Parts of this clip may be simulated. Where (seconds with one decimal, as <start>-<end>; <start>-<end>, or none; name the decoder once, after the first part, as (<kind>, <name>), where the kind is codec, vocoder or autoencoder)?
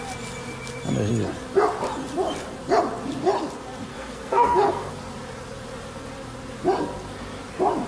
3.9-4.9 (codec, SNAC)